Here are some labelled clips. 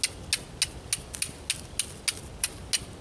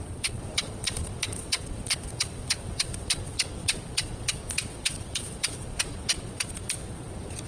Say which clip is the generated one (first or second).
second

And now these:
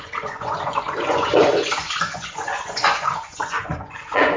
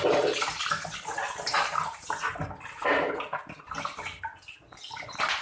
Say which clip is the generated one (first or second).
first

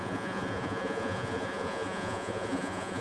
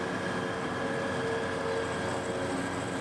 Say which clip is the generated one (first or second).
first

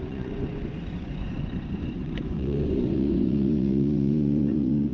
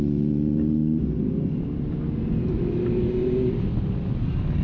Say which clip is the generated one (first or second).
first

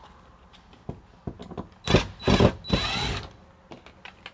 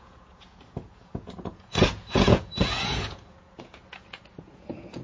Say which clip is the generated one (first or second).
second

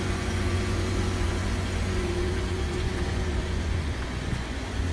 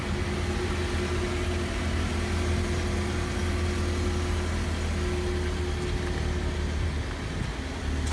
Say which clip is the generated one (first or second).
first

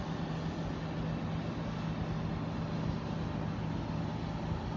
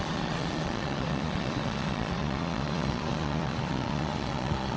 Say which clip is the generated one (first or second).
second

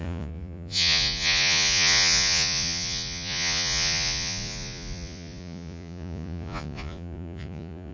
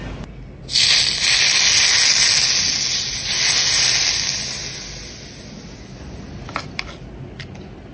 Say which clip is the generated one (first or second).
first